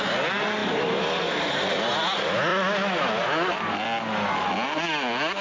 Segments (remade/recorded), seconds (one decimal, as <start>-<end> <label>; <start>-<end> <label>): 0.0-0.6 recorded; 0.6-1.8 remade; 1.8-2.5 recorded; 2.5-4.3 remade; 4.3-5.4 recorded